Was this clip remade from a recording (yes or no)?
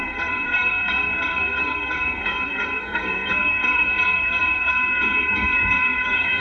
yes